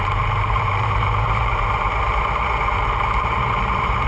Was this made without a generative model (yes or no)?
no